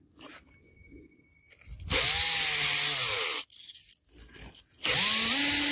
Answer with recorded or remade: recorded